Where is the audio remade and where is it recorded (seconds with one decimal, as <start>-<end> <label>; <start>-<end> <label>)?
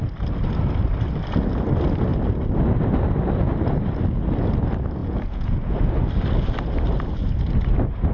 0.0-5.0 recorded; 5.0-5.7 remade; 5.7-8.1 recorded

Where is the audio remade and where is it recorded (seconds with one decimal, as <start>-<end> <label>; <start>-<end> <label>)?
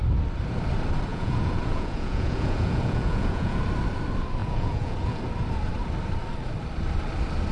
0.0-1.1 recorded; 1.1-3.6 remade; 3.6-4.4 recorded; 4.4-5.2 remade; 5.2-7.5 recorded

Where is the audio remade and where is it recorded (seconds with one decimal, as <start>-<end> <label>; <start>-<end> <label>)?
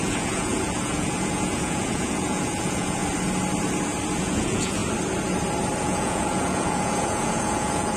0.0-3.0 remade; 3.0-4.2 recorded; 4.2-4.8 remade; 4.8-5.8 recorded; 5.8-8.0 remade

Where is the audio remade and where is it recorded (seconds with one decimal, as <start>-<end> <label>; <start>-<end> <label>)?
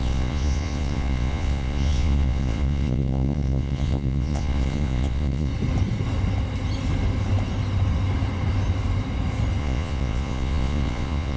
0.0-5.5 remade; 5.5-9.6 recorded; 9.6-11.4 remade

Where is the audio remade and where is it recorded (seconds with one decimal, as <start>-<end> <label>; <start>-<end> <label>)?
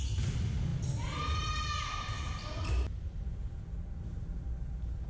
0.0-5.1 recorded